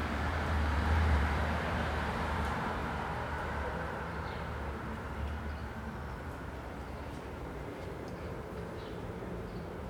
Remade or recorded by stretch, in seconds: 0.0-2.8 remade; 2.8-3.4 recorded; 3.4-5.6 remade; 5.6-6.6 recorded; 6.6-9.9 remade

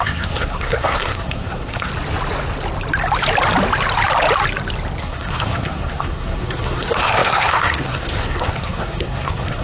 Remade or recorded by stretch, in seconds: 0.0-1.9 remade; 1.9-5.0 recorded; 5.0-9.6 remade

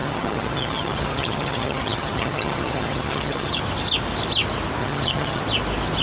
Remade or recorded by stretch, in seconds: 0.0-3.6 remade; 3.6-4.8 recorded; 4.8-5.4 remade; 5.4-6.0 recorded